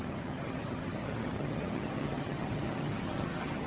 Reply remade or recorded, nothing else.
remade